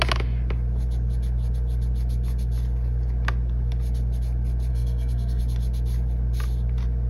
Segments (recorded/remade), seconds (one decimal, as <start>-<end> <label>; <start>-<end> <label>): 0.0-4.7 recorded; 4.7-5.4 remade; 5.4-7.1 recorded